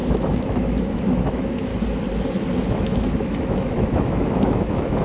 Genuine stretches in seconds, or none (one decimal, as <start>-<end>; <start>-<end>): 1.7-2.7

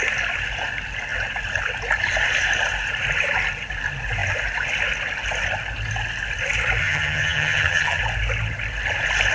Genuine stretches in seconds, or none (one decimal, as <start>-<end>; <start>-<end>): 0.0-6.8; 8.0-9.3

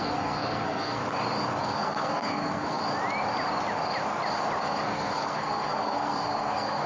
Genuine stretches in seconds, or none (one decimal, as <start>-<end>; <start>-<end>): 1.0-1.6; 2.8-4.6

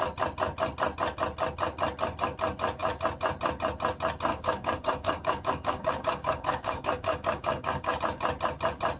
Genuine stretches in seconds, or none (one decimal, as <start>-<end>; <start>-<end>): 0.0-4.3; 8.0-9.0